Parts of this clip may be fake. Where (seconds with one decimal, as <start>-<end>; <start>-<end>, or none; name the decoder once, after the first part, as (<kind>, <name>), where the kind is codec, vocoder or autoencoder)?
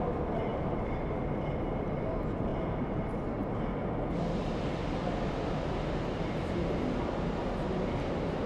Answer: 0.5-1.1 (vocoder, BigVGAN v2); 2.5-3.0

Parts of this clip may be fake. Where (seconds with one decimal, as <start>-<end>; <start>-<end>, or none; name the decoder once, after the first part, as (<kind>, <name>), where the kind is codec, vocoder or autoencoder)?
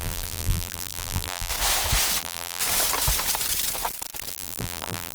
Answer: 0.0-1.5 (vocoder, BigVGAN v2); 2.2-2.6; 4.3-5.1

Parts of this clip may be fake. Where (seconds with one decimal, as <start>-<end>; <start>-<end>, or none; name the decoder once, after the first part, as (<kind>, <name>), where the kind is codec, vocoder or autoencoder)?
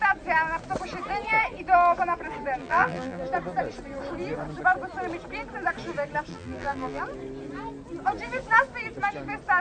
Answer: 2.6-3.2 (vocoder, BigVGAN v2); 6.3-7.0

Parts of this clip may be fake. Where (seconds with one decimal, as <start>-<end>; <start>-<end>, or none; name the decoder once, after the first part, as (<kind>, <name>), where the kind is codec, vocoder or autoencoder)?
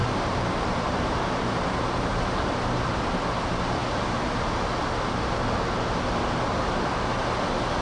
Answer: 0.0-3.0 (vocoder, BigVGAN v2)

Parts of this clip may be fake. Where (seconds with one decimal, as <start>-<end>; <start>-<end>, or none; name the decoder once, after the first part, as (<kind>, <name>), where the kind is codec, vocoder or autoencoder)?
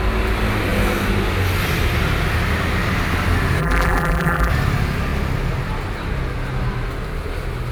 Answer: 3.6-4.5 (vocoder, BigVGAN v2)